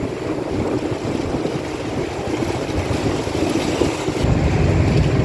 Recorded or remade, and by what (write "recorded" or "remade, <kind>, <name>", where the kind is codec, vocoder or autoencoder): recorded